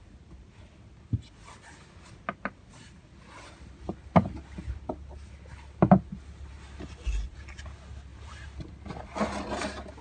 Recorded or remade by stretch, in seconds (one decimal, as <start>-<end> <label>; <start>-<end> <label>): 0.0-10.0 recorded